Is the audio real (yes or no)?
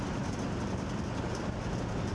yes